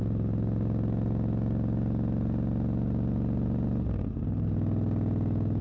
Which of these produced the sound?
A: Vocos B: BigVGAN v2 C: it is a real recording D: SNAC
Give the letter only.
C